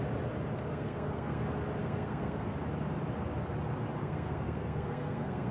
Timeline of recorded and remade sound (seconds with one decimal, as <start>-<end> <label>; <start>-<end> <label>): 0.0-0.7 recorded; 0.7-1.4 remade; 1.4-1.8 recorded; 1.8-2.5 remade; 2.5-4.0 recorded; 4.0-5.5 remade